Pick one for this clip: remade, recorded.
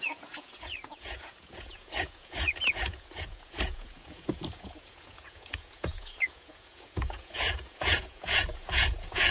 remade